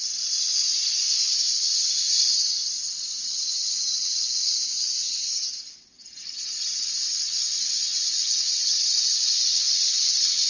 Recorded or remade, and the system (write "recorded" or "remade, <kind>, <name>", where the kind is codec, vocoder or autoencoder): remade, vocoder, WaveNeXt